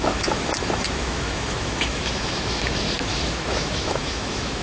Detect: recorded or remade remade